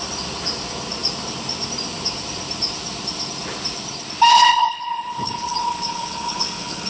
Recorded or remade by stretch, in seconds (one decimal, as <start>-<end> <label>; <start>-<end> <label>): 0.0-4.3 recorded; 4.3-6.9 remade